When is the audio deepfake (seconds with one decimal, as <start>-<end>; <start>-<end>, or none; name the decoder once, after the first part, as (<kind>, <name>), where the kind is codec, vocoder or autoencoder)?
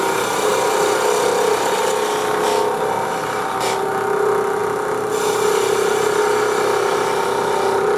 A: none